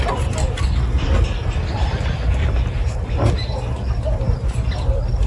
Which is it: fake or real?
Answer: real